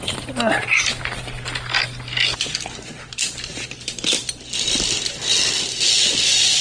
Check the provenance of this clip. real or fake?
real